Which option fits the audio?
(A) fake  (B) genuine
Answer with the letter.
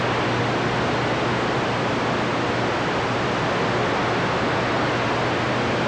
B